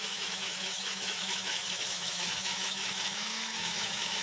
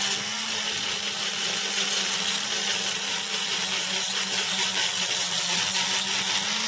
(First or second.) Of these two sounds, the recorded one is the second